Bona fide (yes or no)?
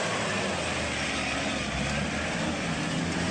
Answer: yes